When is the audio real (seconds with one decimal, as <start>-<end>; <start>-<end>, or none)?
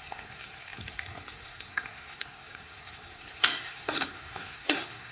none